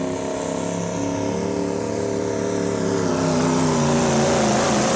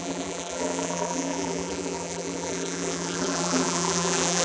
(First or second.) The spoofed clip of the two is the second